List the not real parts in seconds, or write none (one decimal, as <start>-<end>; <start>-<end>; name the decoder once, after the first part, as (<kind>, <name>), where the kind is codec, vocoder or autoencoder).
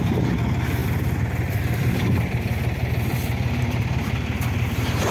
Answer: 0.0-5.1 (vocoder, BigVGAN v2)